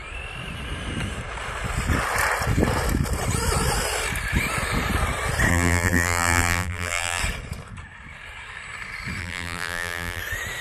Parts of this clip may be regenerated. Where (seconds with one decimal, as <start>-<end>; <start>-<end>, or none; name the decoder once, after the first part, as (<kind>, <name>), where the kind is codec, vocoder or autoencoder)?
5.5-7.2 (vocoder, BigVGAN v2); 9.2-10.2